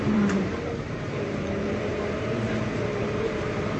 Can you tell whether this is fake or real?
fake